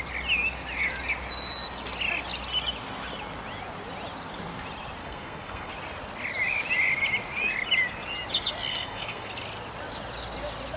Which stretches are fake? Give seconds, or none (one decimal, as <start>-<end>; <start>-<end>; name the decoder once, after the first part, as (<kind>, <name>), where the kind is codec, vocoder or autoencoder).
5.0-5.7 (codec, SNAC); 8.7-9.3